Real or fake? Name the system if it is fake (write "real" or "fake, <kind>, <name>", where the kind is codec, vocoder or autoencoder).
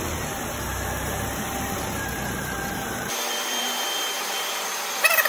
fake, vocoder, BigVGAN v2